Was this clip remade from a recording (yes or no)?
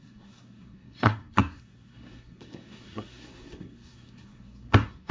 yes